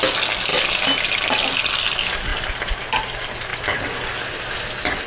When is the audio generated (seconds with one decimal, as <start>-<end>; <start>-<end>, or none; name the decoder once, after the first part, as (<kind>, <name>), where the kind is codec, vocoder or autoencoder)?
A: none